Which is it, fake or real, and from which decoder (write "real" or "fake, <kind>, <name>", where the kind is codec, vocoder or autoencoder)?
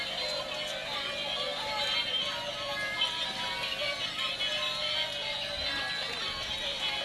real